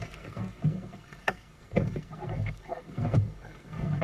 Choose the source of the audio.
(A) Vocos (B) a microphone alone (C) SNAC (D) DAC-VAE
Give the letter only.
C